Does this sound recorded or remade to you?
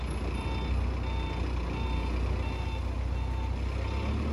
recorded